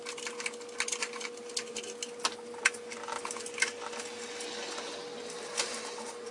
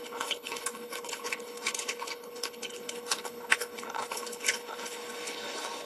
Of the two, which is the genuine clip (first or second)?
first